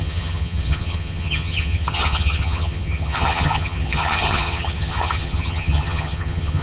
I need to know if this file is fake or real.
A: fake